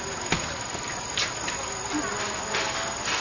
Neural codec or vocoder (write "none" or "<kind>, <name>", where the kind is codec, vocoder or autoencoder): none